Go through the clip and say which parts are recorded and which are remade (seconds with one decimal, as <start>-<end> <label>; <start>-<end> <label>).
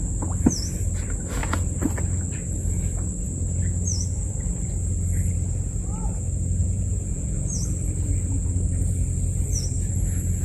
0.0-6.6 recorded; 6.6-7.4 remade; 7.4-10.4 recorded